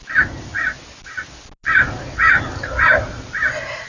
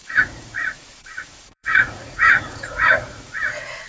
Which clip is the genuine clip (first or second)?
first